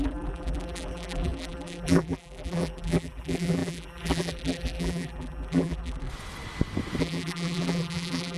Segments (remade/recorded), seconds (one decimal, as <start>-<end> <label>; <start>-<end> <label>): 0.0-6.1 remade; 6.1-7.0 recorded; 7.0-8.4 remade